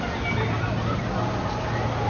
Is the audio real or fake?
real